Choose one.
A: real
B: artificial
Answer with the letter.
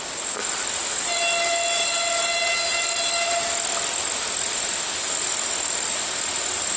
A